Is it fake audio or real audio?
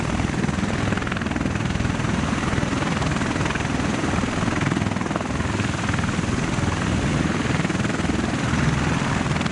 fake